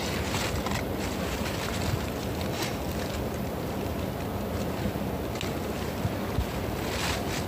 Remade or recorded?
recorded